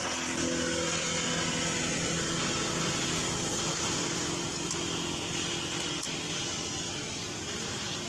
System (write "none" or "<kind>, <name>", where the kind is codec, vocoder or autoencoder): none